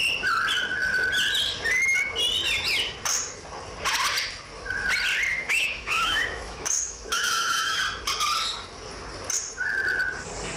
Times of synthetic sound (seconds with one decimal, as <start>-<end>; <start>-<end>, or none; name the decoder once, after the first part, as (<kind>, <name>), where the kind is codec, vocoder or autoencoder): 5.3-7.8 (autoencoder, DAC-VAE)

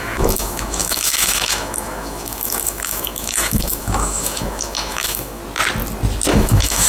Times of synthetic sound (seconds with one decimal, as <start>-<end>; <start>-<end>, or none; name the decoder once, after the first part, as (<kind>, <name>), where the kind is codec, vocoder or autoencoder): 0.0-5.4 (autoencoder, DAC-VAE); 6.3-6.9